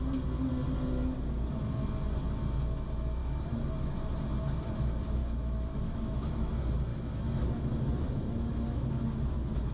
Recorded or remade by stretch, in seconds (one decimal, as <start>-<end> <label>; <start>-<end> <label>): 0.0-3.2 recorded; 3.2-3.9 remade; 3.9-5.2 recorded; 5.2-6.5 remade; 6.5-6.9 recorded; 6.9-9.7 remade